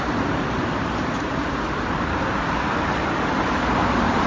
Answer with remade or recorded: remade